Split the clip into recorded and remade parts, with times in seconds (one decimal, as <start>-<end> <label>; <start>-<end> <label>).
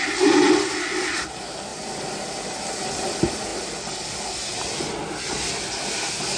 0.0-6.4 recorded